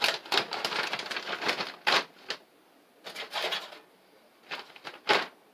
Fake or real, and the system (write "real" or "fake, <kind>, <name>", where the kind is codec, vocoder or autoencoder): real